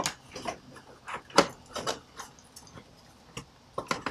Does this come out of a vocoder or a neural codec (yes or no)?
no